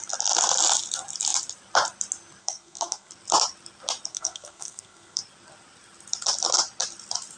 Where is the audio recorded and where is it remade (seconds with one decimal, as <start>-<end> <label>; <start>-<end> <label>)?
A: 0.0-2.4 recorded; 2.4-3.1 remade; 3.1-4.1 recorded; 4.1-5.2 remade; 5.2-7.4 recorded